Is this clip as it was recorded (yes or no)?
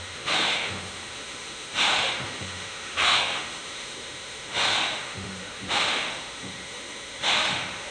no